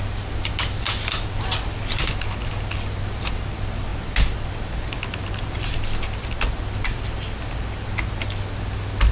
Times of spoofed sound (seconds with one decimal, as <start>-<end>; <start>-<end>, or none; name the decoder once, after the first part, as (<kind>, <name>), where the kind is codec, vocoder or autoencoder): none

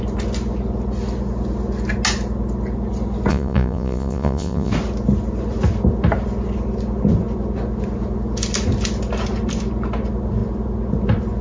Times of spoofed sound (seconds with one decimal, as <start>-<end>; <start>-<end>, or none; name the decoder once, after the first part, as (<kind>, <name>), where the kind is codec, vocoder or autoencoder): 3.3-4.7 (vocoder, Vocos)

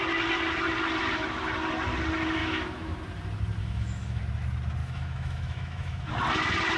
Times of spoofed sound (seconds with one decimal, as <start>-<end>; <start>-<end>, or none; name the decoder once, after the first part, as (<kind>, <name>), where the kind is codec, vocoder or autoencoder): 2.4-3.0 (autoencoder, DAC-VAE); 3.6-4.2; 4.8-6.1

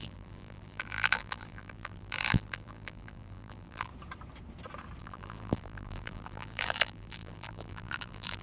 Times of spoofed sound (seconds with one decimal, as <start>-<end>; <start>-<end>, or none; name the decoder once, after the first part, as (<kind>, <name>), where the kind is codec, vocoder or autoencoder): 0.0-3.9 (vocoder, BigVGAN v2); 5.0-8.4

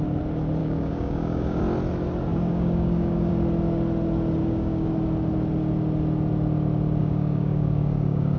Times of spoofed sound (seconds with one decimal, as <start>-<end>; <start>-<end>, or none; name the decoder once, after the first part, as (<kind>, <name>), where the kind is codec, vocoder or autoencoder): 0.6-1.6 (codec, DAC); 2.3-3.3; 4.4-4.9; 7.0-8.4

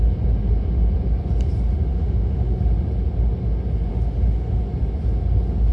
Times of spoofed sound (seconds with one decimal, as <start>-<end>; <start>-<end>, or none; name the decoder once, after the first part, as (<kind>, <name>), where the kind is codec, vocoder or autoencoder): 1.9-2.6 (autoencoder, DAC-VAE); 3.9-4.6

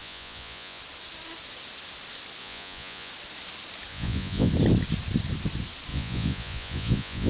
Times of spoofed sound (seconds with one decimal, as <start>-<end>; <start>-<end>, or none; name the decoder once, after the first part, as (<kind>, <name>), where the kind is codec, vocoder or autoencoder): 0.0-0.8 (vocoder, Vocos); 2.4-3.1; 3.9-4.5; 5.9-7.3